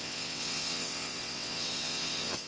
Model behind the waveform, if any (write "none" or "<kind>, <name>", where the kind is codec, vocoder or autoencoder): vocoder, WaveNeXt